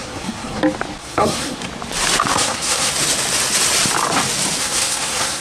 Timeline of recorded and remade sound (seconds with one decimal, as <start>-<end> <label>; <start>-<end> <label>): 0.0-0.6 remade; 0.6-1.0 recorded; 1.0-1.6 remade; 1.6-2.3 recorded; 2.3-2.9 remade; 2.9-4.6 recorded; 4.6-5.4 remade